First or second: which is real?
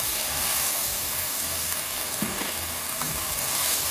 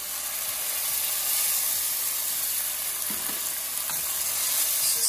second